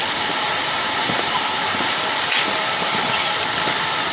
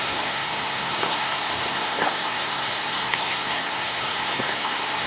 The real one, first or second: first